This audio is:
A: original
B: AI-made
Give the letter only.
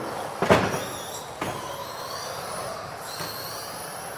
A